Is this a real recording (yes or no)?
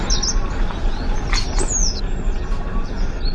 yes